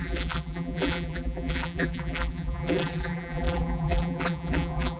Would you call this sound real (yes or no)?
no